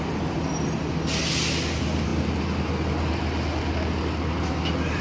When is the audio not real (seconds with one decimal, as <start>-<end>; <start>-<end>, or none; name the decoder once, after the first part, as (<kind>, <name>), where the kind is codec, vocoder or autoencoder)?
none